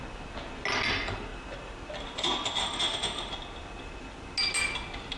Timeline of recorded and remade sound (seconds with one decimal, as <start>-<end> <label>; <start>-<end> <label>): 0.0-2.6 recorded; 2.6-3.3 remade; 3.3-5.2 recorded